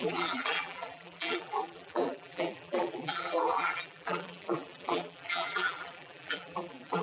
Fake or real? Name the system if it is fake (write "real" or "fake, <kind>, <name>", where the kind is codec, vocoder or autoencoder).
fake, vocoder, BigVGAN v2